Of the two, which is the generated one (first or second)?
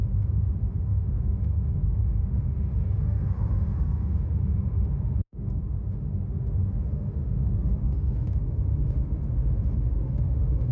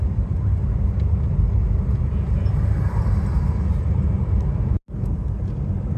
first